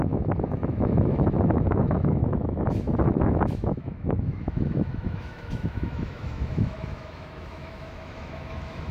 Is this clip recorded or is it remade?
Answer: remade